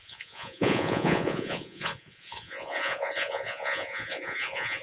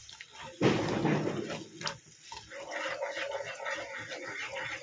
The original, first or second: second